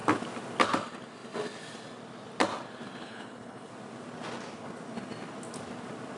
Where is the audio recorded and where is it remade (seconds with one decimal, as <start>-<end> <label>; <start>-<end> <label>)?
0.0-3.0 recorded; 3.0-3.7 remade; 3.7-6.2 recorded